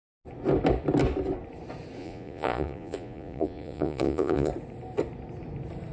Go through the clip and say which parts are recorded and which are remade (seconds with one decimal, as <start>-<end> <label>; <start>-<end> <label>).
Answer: 0.0-2.0 recorded; 2.0-4.5 remade; 4.5-5.9 recorded